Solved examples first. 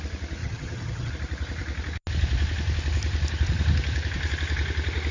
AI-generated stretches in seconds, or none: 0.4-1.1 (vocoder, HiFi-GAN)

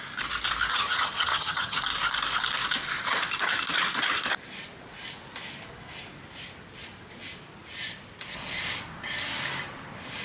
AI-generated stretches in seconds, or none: 0.7-1.8 (vocoder, HiFi-GAN)

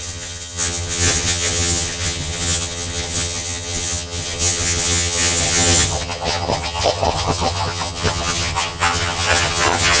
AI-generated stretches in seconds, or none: 0.0-10.0 (vocoder, HiFi-GAN)

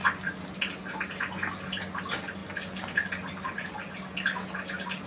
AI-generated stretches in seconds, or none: none

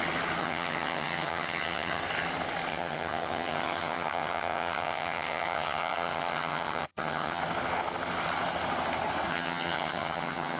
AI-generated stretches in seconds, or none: 0.4-2.0 (vocoder, HiFi-GAN); 2.7-7.4; 9.3-10.6

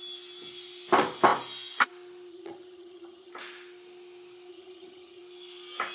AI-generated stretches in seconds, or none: 2.3-3.3 (vocoder, HiFi-GAN); 4.5-5.2

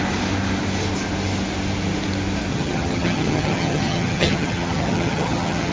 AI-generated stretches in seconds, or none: 2.5-5.7 (vocoder, HiFi-GAN)

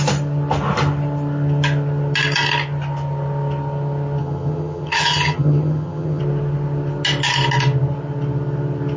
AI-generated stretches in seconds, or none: 4.2-6.2 (vocoder, HiFi-GAN)